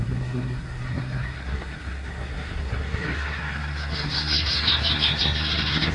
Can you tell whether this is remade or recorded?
remade